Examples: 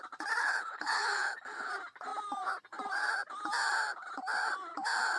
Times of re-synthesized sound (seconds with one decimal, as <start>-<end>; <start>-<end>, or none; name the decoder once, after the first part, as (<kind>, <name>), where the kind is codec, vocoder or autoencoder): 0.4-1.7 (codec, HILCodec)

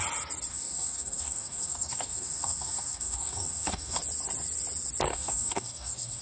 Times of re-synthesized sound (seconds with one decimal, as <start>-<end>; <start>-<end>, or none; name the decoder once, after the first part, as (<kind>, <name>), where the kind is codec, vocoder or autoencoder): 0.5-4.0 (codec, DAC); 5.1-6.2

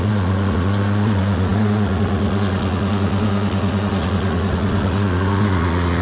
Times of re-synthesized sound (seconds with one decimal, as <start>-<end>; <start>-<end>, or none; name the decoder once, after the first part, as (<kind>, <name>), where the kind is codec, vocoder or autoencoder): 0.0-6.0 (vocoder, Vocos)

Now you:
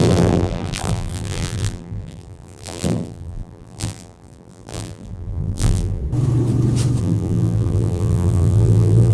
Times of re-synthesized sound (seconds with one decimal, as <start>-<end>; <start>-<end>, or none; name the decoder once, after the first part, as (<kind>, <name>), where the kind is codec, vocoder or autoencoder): 0.0-6.0 (vocoder, BigVGAN v2); 7.0-9.1

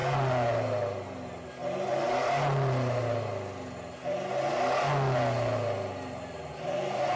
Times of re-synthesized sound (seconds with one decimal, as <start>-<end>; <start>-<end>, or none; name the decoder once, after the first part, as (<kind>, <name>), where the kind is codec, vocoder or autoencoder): none

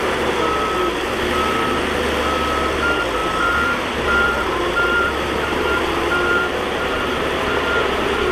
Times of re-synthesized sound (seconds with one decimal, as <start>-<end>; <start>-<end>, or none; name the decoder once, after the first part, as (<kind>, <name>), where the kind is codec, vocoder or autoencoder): 3.2-8.3 (vocoder, BigVGAN v2)

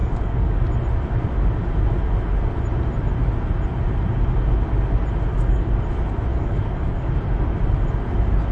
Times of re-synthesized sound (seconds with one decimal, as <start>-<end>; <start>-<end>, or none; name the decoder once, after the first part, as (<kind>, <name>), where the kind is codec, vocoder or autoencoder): 0.0-0.6 (codec, DAC); 5.3-5.8; 6.3-7.1